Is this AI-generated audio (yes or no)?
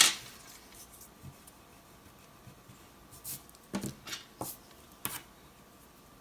no